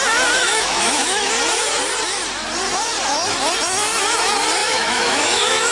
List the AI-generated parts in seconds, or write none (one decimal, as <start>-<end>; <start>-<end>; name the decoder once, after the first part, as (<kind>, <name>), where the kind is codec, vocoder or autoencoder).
0.4-1.3 (autoencoder, DAC-VAE); 4.6-5.7